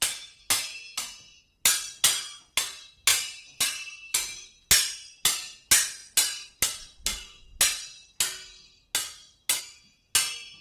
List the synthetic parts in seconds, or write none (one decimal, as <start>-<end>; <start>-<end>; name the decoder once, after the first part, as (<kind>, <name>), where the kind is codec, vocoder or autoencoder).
3.1-4.5 (vocoder, BigVGAN v2)

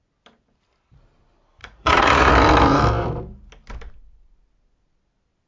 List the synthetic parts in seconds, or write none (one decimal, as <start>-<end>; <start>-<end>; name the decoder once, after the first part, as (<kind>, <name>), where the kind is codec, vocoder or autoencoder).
1.6-2.3 (vocoder, Vocos)

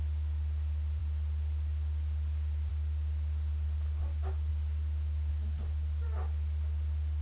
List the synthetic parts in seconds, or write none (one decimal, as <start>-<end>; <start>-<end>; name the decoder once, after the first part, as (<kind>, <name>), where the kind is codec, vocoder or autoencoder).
none

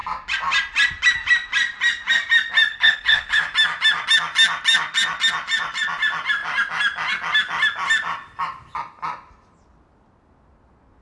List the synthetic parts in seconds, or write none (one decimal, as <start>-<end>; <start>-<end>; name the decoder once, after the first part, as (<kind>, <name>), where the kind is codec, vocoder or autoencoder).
2.7-3.4 (codec, HILCodec)

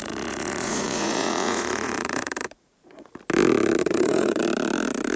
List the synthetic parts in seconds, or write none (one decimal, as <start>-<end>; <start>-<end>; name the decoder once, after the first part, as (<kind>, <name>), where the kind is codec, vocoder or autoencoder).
0.0-3.1 (vocoder, Vocos); 3.8-4.4

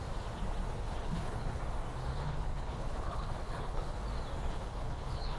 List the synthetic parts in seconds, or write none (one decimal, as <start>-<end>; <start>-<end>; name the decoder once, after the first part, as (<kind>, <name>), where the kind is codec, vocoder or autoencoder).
0.7-1.6 (codec, HILCodec); 2.1-4.0; 4.5-5.4

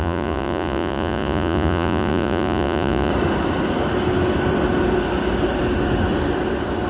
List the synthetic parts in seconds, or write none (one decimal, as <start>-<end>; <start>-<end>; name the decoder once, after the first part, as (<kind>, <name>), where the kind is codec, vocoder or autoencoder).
0.0-3.1 (vocoder, Vocos)